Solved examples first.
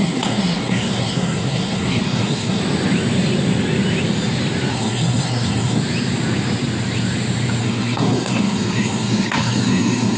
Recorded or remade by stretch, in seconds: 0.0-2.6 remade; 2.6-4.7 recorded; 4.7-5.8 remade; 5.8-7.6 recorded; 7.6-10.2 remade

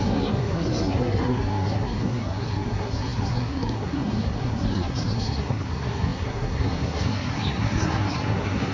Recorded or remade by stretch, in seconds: 0.0-8.7 remade

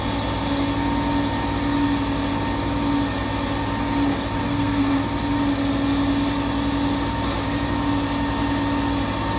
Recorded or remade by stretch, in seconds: 0.0-4.4 recorded; 4.4-4.9 remade; 4.9-9.4 recorded

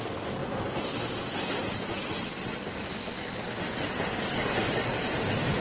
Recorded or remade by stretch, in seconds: 0.0-5.6 recorded

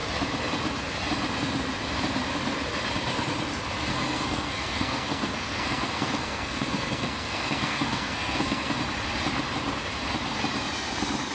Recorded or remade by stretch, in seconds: 0.0-3.9 recorded; 3.9-8.8 remade; 8.8-11.3 recorded

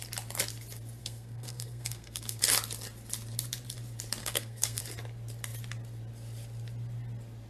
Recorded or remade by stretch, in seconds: 0.0-1.0 recorded; 1.0-2.4 remade; 2.4-4.2 recorded; 4.2-4.8 remade; 4.8-7.5 recorded